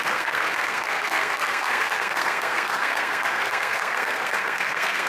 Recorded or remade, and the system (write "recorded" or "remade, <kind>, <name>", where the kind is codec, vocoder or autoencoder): remade, codec, SNAC